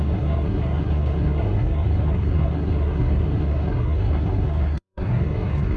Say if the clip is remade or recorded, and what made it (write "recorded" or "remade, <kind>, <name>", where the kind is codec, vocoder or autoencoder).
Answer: remade, codec, SNAC